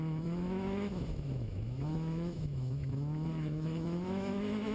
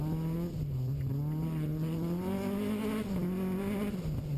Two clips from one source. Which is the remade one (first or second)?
first